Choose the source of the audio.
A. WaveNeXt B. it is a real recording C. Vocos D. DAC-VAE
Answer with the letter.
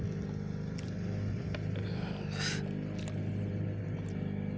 B